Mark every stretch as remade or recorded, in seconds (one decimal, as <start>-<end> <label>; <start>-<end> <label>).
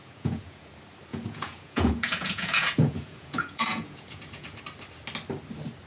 0.0-0.7 remade; 0.7-1.1 recorded; 1.1-4.6 remade; 4.6-5.9 recorded